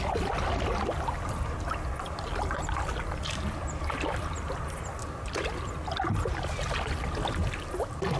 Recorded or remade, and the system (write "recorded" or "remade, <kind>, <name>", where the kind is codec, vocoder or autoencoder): recorded